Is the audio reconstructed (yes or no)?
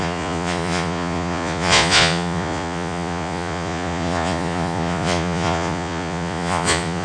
yes